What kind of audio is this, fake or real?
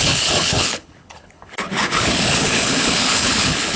fake